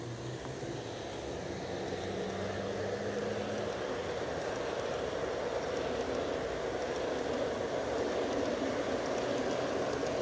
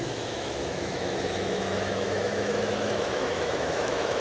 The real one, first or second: first